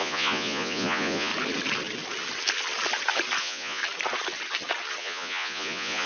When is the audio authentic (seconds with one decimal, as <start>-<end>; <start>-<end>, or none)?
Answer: 1.3-3.4; 3.8-5.0